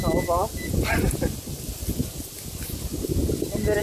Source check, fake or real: real